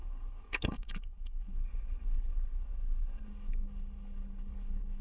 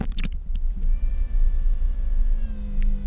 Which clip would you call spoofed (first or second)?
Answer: first